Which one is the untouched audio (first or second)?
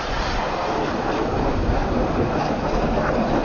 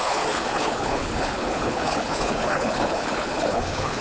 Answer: first